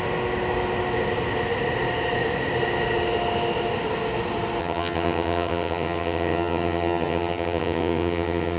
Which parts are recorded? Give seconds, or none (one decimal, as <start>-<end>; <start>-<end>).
0.0-4.6